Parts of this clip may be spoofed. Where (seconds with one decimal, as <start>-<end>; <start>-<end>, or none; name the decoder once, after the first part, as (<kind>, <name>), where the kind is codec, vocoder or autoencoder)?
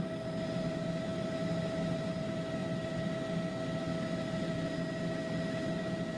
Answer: none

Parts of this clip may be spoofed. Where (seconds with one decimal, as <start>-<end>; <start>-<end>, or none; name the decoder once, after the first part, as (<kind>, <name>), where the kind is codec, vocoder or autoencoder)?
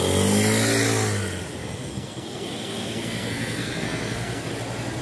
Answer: 1.6-4.5 (codec, SNAC)